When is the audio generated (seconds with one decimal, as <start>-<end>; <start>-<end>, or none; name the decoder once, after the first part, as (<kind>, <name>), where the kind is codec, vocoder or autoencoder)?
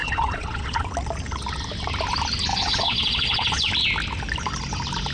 0.0-0.8 (vocoder, Vocos); 2.5-3.7